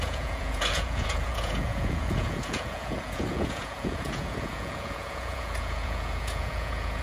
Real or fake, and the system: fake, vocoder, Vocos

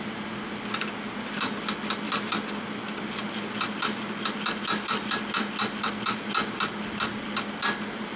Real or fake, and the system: real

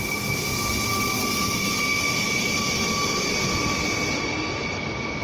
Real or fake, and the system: real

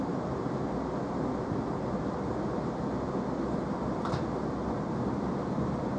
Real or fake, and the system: real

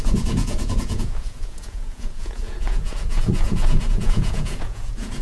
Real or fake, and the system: fake, vocoder, Vocos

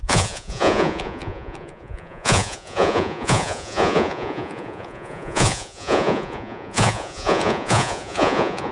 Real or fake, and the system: fake, vocoder, Vocos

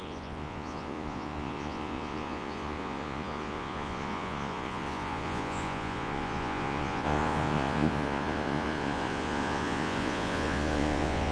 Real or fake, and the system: fake, vocoder, Vocos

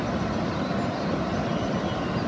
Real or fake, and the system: real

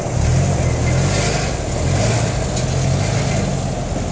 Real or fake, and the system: real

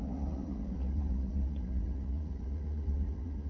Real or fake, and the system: fake, vocoder, Vocos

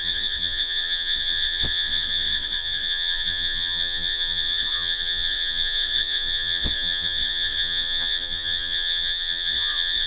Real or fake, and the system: fake, vocoder, Vocos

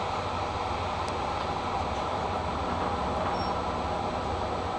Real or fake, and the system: real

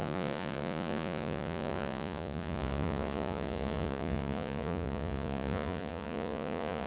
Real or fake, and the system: fake, vocoder, Vocos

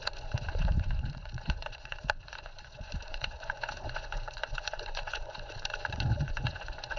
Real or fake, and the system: fake, vocoder, Vocos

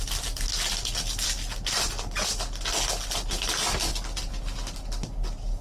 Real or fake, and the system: real